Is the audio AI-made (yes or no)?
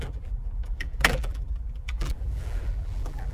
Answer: yes